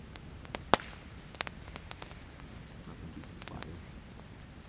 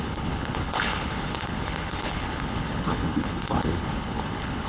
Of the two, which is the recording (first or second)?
first